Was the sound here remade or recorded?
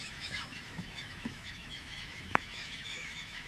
remade